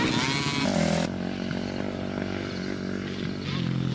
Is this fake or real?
real